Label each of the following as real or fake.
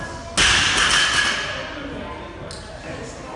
real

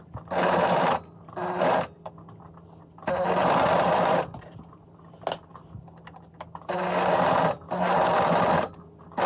real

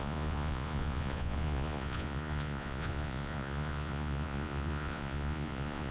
fake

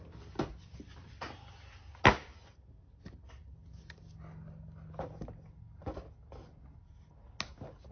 real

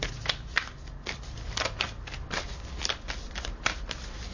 real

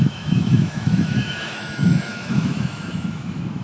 fake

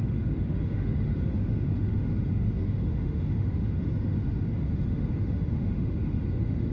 fake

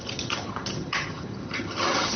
fake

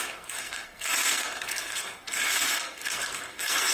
fake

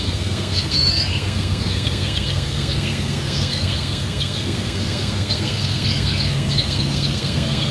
fake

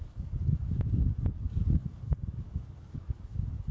fake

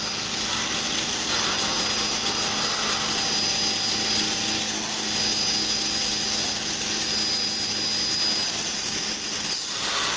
real